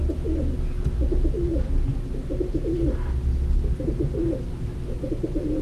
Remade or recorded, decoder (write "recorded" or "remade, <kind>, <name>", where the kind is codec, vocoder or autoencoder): recorded